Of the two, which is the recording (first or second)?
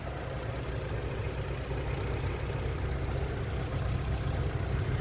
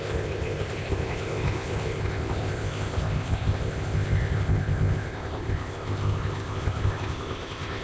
first